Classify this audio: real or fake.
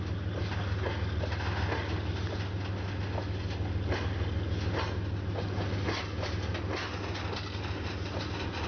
real